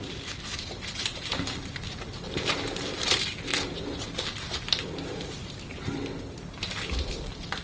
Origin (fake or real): fake